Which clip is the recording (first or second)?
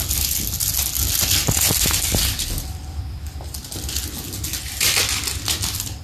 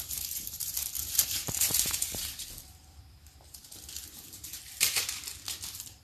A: first